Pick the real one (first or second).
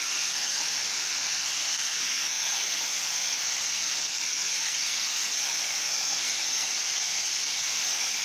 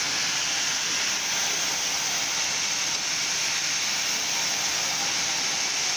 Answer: second